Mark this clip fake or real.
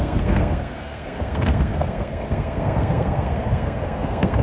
fake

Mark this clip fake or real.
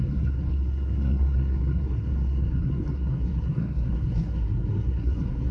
fake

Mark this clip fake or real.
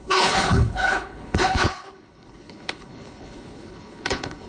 fake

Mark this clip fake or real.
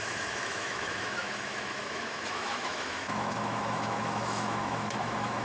fake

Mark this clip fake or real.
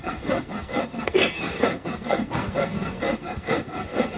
fake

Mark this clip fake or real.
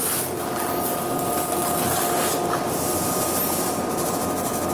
real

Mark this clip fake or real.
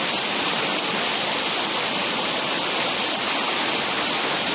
real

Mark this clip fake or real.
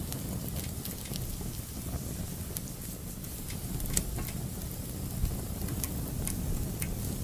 real